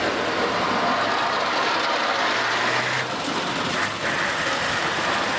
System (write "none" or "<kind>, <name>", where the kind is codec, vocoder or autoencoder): none